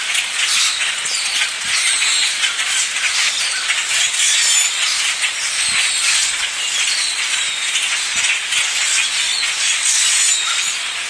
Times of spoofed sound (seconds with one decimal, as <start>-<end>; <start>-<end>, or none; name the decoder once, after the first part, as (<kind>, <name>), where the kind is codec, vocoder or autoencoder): none